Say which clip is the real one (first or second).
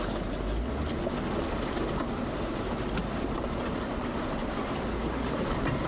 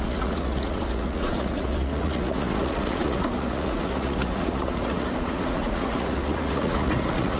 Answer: first